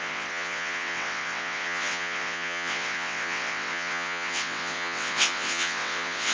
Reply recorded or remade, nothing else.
remade